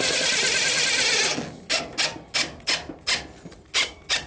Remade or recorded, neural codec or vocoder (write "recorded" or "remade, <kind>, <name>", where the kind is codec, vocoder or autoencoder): recorded